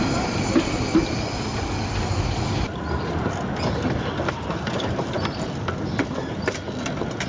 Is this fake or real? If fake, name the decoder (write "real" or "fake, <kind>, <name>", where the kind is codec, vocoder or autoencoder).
real